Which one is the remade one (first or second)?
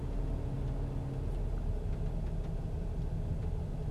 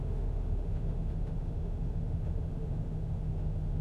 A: second